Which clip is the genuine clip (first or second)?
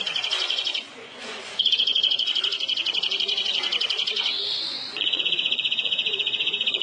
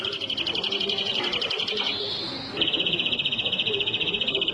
second